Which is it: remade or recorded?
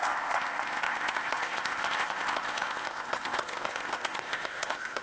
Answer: remade